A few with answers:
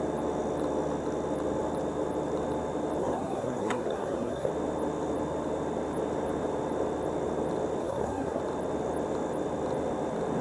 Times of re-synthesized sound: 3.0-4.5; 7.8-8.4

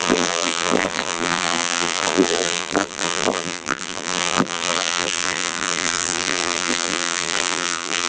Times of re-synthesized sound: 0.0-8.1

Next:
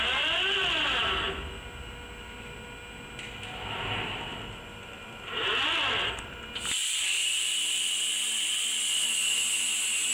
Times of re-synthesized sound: 4.3-5.3; 6.8-7.9

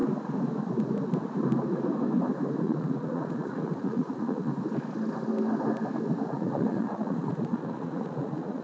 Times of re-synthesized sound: 2.6-4.5; 6.3-8.6

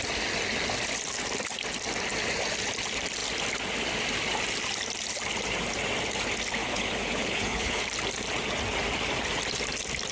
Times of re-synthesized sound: 6.6-7.8

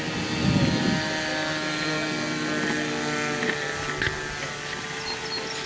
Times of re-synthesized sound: none

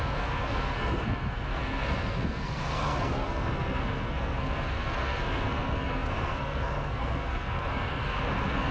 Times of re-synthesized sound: 0.0-8.7

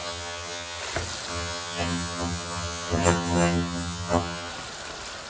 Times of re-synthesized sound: 0.0-0.8; 1.3-4.5